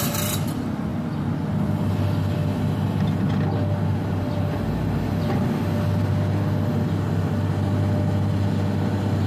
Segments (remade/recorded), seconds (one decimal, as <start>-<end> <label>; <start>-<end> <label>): 0.0-9.3 recorded